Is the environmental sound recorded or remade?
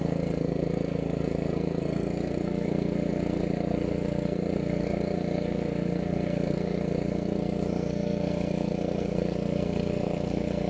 remade